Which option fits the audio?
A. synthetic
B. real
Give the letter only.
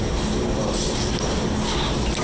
B